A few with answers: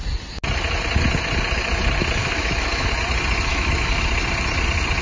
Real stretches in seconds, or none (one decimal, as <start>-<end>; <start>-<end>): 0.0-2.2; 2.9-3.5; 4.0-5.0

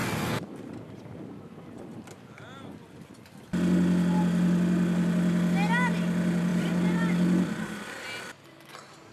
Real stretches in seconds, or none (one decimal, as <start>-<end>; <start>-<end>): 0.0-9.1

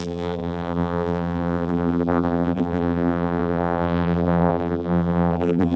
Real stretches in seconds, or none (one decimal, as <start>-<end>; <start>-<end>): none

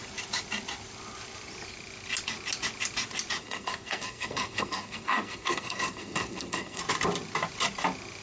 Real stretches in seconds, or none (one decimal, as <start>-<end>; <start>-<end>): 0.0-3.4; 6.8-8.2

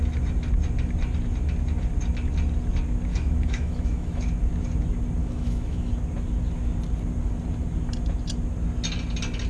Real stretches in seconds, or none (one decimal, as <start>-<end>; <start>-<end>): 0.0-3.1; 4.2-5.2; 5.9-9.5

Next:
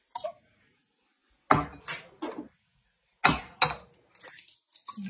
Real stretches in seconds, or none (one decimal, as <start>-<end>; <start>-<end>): 0.0-5.1

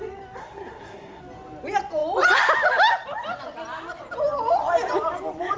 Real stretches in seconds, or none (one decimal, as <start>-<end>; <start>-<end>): 0.0-0.4; 1.2-5.6